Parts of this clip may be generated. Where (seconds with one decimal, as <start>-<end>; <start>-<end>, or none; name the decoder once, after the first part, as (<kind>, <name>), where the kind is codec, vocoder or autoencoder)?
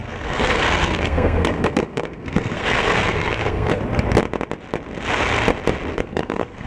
0.0-3.8 (codec, SNAC); 5.9-6.7